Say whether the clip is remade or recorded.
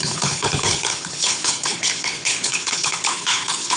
remade